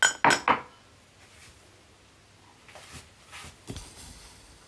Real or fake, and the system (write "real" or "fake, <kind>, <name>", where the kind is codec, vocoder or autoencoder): real